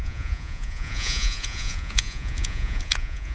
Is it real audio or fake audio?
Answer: fake